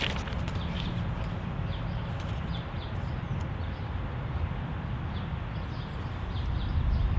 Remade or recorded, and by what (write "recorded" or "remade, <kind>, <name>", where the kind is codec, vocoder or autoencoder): recorded